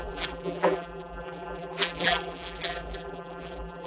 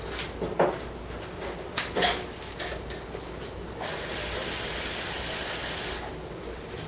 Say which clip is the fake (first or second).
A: first